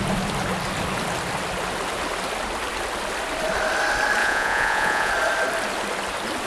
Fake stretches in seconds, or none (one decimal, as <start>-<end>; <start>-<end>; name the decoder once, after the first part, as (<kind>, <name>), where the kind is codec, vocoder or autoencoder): 4.2-5.1 (vocoder, Vocos)

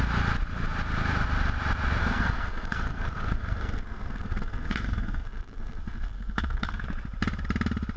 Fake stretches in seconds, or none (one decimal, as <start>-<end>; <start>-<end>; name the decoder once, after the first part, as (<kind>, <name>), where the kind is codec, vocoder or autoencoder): 2.0-6.8 (codec, SNAC)

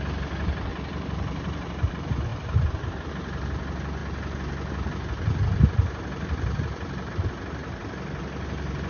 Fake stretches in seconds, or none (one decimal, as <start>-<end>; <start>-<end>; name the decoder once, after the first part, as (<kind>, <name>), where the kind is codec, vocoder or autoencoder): 0.7-1.9 (vocoder, BigVGAN v2); 2.3-3.1

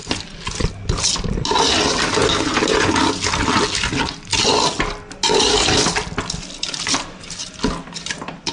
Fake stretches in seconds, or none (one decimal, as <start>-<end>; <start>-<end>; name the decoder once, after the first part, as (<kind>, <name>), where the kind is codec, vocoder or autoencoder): none

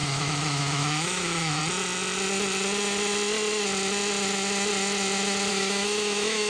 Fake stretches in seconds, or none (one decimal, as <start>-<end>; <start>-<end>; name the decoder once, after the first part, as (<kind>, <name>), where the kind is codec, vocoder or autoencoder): 0.0-1.6 (autoencoder, DAC-VAE); 5.5-6.5

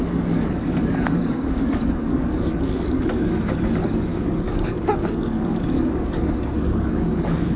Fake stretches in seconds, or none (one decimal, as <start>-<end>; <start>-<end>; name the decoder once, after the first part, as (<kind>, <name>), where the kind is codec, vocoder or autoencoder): 0.0-7.6 (codec, DAC)

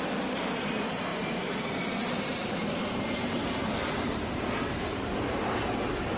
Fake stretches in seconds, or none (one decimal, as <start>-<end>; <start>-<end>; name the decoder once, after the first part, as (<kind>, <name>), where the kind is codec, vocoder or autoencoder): 0.0-6.2 (vocoder, BigVGAN v2)

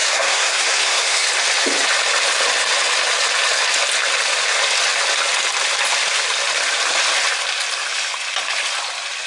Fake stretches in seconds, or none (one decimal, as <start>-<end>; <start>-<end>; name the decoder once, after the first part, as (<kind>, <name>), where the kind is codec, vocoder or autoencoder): 0.0-1.3 (codec, SNAC)